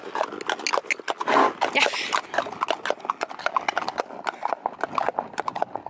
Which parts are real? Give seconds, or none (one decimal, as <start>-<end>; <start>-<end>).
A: 0.0-5.9